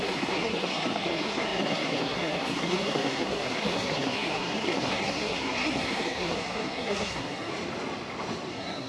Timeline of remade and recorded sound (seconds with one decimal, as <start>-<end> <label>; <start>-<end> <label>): 0.0-7.5 remade; 7.5-8.5 recorded; 8.5-8.9 remade